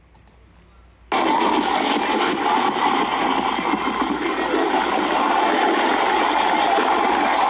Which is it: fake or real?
real